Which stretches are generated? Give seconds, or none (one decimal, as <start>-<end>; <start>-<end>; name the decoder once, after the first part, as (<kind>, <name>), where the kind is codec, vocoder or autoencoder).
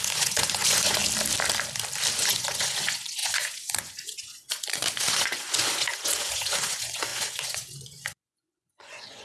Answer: 0.0-1.0 (vocoder, Vocos); 2.1-9.2